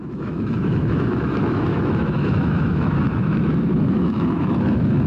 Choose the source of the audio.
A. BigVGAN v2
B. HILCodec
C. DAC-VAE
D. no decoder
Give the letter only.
C